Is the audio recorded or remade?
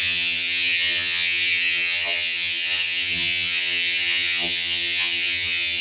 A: remade